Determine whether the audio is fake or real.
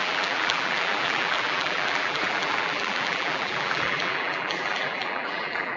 fake